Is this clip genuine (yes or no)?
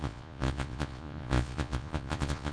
no